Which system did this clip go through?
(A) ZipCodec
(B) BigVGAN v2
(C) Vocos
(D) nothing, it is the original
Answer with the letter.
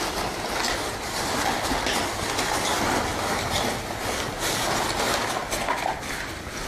D